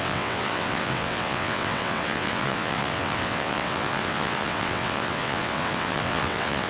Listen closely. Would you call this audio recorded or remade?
remade